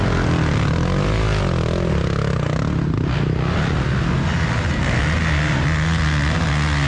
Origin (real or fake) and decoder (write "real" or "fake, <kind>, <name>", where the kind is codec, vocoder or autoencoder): real